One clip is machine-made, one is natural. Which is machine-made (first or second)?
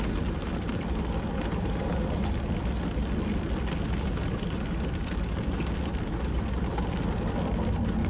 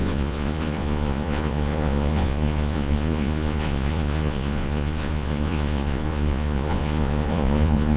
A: second